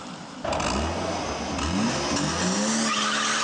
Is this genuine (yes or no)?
yes